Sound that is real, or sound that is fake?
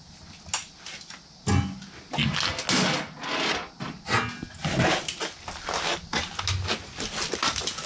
real